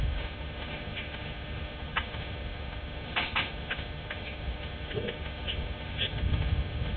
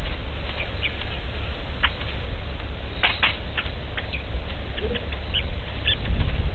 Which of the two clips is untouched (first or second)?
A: second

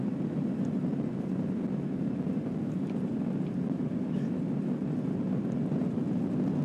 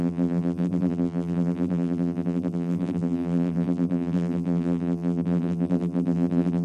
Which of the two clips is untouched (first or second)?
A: first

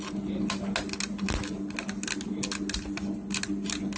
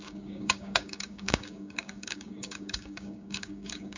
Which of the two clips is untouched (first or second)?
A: first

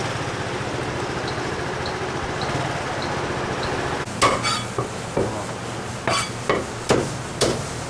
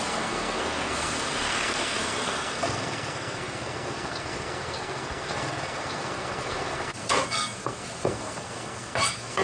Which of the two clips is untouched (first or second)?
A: first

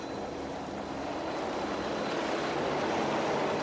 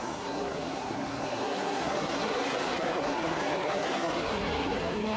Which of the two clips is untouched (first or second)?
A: first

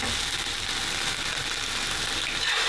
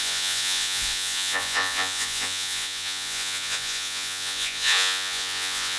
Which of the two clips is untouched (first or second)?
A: first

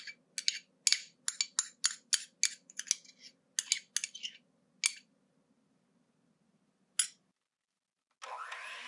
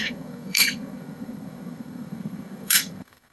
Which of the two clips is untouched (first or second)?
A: first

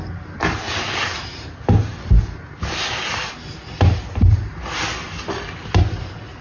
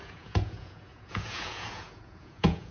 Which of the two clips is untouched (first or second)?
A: first